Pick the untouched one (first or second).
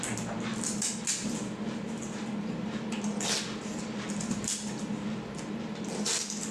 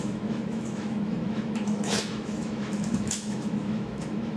first